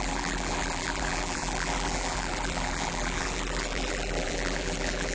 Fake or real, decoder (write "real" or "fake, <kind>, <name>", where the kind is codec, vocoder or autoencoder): fake, vocoder, BigVGAN v2